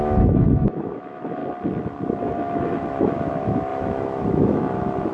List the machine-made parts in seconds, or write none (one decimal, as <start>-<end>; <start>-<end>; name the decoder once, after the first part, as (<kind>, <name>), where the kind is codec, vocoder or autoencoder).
0.0-1.4 (autoencoder, DAC-VAE); 2.2-5.1